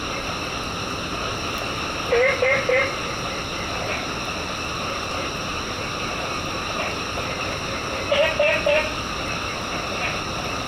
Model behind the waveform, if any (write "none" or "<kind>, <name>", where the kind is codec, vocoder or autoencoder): none